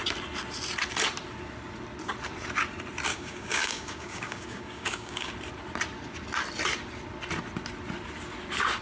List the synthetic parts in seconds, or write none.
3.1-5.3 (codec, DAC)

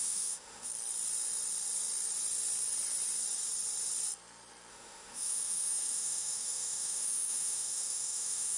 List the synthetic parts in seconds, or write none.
0.0-0.7 (autoencoder, DAC-VAE); 4.7-8.6

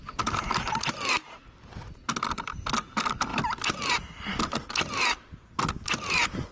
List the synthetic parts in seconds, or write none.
none